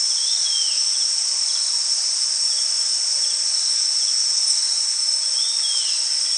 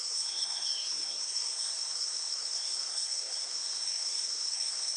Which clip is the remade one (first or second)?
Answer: second